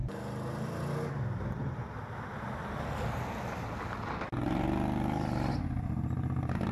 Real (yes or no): yes